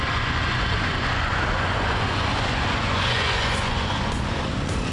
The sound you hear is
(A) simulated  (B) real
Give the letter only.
A